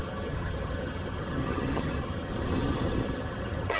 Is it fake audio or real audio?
fake